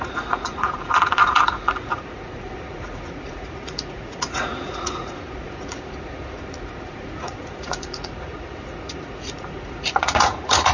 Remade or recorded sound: remade